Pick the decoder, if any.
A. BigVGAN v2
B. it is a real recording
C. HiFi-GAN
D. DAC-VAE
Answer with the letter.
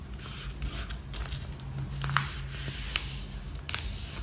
B